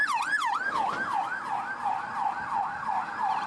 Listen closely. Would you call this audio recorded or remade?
recorded